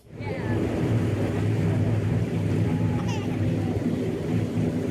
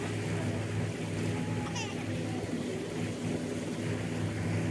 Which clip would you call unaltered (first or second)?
second